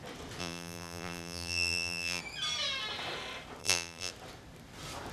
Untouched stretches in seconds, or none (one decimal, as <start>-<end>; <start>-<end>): 0.0-0.4; 2.2-3.6; 4.1-5.1